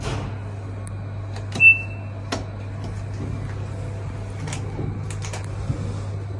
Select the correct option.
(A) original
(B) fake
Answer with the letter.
A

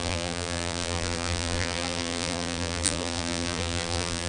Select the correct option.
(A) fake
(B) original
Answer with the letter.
A